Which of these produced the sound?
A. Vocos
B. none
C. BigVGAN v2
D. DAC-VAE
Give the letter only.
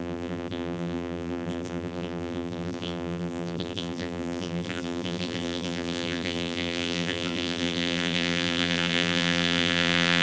C